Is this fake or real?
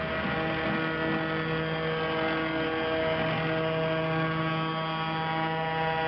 real